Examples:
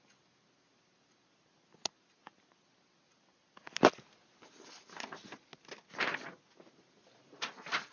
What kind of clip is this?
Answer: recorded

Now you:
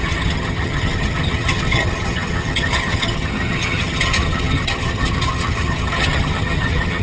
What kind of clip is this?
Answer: remade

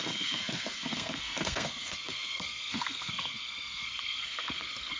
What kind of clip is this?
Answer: remade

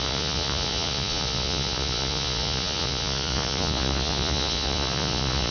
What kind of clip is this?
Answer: remade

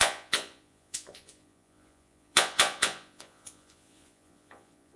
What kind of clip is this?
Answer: remade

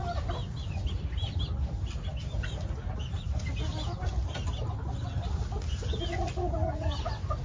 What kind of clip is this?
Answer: recorded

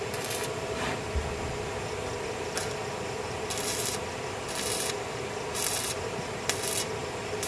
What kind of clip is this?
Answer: recorded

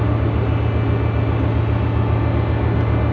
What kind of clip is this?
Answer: recorded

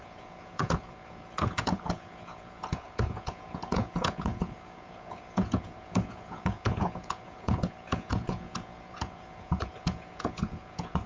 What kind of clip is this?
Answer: remade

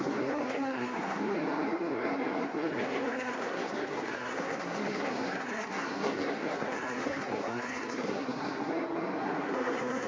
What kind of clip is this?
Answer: remade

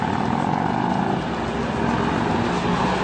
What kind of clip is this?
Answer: recorded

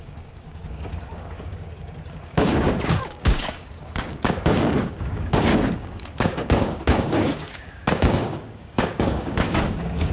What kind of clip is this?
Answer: remade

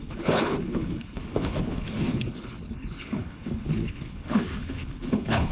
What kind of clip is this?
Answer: remade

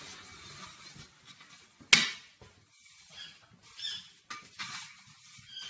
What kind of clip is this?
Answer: recorded